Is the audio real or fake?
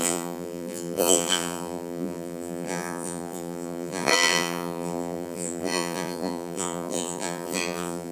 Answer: fake